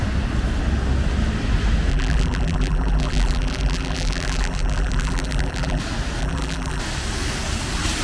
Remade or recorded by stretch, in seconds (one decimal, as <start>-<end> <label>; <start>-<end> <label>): 0.0-1.9 recorded; 1.9-5.8 remade; 5.8-6.2 recorded; 6.2-6.8 remade; 6.8-8.0 recorded